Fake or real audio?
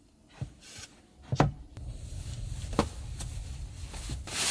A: real